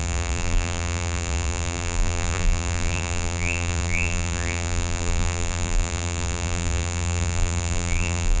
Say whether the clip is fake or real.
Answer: fake